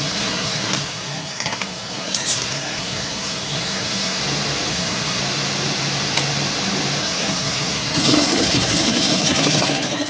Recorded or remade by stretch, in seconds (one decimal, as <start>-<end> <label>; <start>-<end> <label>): 0.0-4.2 remade; 4.2-4.7 recorded; 4.7-5.2 remade; 5.2-7.0 recorded; 7.0-10.1 remade